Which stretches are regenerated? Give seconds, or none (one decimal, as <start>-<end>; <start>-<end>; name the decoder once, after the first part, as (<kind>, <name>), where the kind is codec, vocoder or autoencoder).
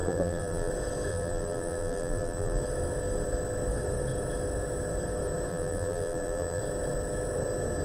0.0-0.7 (vocoder, BigVGAN v2); 1.1-2.6; 5.5-6.6